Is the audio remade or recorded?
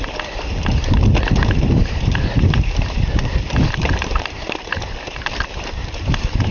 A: remade